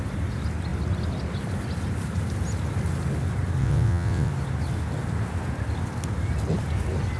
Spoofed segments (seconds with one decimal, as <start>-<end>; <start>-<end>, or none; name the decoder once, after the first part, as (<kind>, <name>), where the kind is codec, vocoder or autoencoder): 3.6-4.3 (vocoder, WaveNeXt)